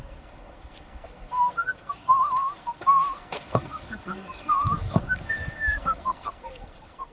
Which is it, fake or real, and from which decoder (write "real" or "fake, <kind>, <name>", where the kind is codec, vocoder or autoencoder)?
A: fake, codec, SNAC